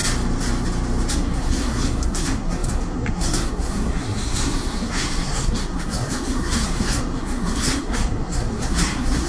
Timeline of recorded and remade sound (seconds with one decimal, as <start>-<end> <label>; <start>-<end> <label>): 0.0-1.1 recorded; 1.1-9.3 remade

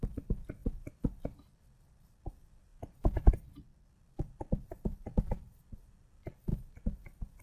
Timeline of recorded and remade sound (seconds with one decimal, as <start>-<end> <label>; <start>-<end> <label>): 0.0-0.6 recorded; 0.6-2.2 remade; 2.2-2.7 recorded; 2.7-3.3 remade; 3.3-3.7 recorded; 3.7-6.0 remade; 6.0-7.4 recorded

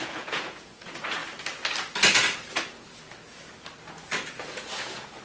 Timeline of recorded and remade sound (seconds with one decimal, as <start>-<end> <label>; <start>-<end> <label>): 0.0-1.2 remade; 1.2-4.3 recorded; 4.3-5.2 remade